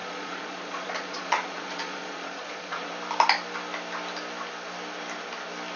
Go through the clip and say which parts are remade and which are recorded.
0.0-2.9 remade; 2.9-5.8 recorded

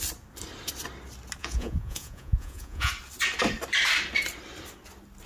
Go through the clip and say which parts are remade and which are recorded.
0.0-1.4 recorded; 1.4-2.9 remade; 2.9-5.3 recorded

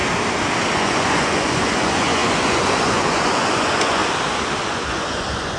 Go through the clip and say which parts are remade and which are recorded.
0.0-0.7 recorded; 0.7-4.0 remade; 4.0-4.6 recorded; 4.6-5.6 remade